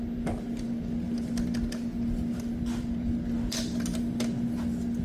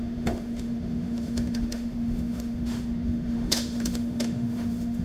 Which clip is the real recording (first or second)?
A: first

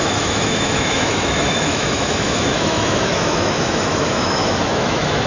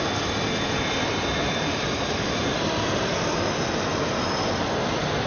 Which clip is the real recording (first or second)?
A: second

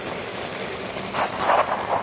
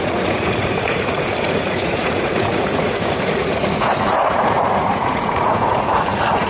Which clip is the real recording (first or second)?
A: first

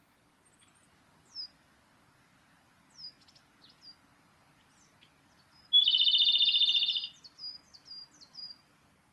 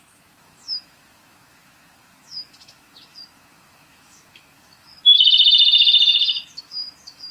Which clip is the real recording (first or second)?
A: first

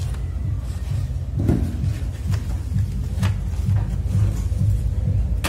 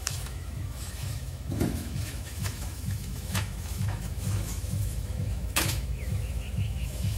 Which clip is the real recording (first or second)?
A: first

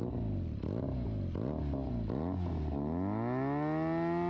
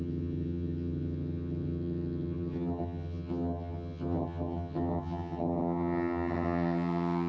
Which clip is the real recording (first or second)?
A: first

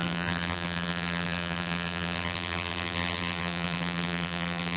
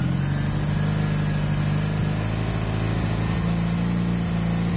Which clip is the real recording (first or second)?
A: second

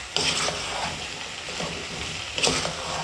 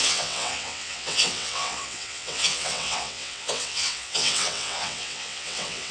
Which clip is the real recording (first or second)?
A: first